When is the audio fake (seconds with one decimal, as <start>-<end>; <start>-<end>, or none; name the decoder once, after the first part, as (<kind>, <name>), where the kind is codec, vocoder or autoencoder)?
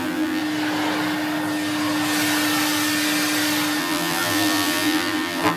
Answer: 0.0-0.4 (vocoder, BigVGAN v2); 3.8-5.6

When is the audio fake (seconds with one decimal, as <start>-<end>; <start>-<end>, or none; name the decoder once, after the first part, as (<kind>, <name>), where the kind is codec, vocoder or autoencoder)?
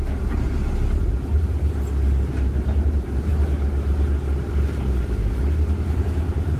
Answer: none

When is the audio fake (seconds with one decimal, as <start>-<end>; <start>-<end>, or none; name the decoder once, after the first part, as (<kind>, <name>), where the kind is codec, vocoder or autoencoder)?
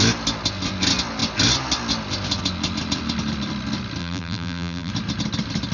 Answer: 4.0-4.9 (vocoder, BigVGAN v2)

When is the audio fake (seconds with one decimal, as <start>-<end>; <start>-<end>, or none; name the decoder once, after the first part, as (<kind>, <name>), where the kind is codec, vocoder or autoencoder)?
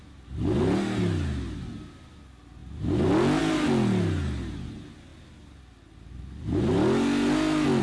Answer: none